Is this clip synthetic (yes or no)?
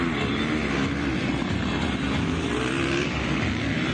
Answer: no